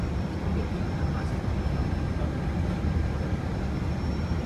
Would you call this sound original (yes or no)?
yes